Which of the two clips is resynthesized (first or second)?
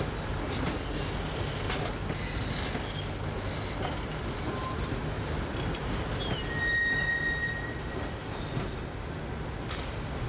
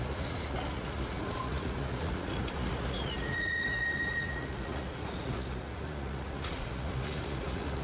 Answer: second